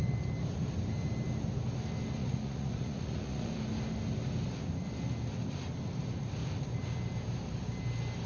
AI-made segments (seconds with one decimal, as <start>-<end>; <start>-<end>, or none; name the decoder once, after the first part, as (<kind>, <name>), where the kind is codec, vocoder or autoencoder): 2.2-3.5 (vocoder, Vocos)